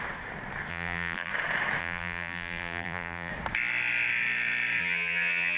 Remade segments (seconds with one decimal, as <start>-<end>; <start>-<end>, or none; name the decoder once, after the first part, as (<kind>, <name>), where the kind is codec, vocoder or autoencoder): 0.7-1.3 (vocoder, BigVGAN v2); 1.8-3.3; 4.8-5.6